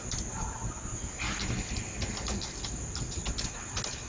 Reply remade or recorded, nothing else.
recorded